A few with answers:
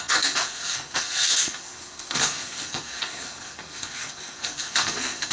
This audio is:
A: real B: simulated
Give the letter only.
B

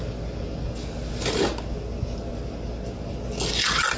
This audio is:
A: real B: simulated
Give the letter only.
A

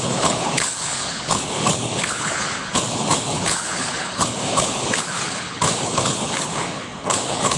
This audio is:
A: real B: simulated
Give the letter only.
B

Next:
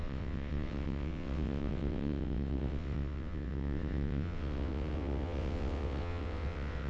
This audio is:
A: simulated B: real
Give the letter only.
A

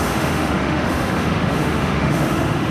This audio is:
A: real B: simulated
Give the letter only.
B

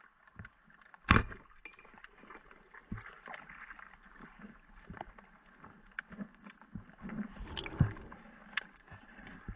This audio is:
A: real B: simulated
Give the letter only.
A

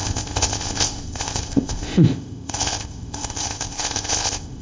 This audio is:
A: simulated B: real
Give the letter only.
A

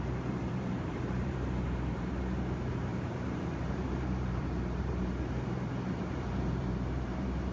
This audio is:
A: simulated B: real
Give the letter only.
A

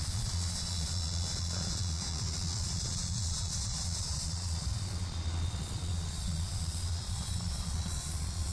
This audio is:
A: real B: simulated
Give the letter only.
B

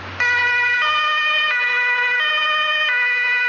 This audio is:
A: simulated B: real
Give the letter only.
B